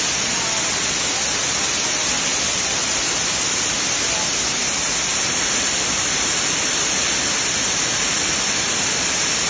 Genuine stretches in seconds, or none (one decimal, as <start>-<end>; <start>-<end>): 0.0-2.3; 3.7-5.1; 7.0-9.5